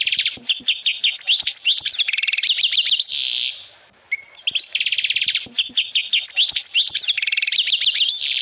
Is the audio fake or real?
real